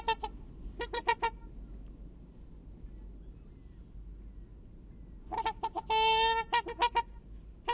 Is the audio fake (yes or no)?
no